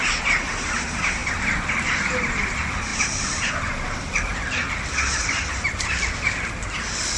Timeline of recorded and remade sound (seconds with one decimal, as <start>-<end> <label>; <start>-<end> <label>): 0.0-1.2 remade; 1.2-1.7 recorded; 1.7-4.3 remade; 4.3-6.8 recorded; 6.8-7.2 remade